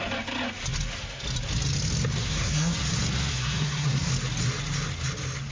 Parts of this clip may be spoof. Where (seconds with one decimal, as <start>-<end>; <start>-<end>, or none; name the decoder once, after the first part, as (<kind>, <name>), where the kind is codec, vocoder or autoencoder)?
2.2-2.8 (codec, SNAC); 3.3-4.1